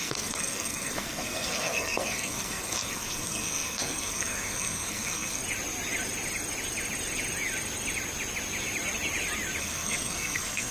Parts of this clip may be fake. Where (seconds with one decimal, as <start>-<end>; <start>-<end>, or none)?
0.0-5.4; 9.6-10.7

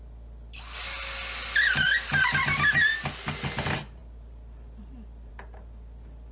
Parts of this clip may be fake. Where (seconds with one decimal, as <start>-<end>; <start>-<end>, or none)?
none

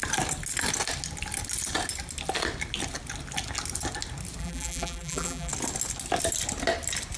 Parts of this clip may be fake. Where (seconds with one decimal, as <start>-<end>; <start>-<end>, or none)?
4.4-5.5

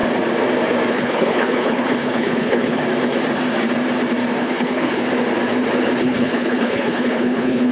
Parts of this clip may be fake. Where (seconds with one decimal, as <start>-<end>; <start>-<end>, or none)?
0.9-2.8; 4.4-5.0; 6.0-7.7

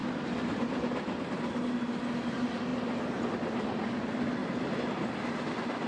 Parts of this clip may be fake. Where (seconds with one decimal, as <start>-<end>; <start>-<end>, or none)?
4.4-5.3

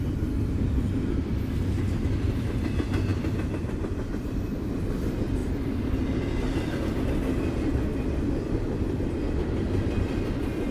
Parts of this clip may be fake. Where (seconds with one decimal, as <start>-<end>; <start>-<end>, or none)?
3.1-4.1

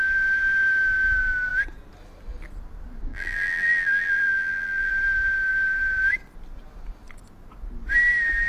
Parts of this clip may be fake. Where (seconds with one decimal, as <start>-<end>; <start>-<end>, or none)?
3.1-4.9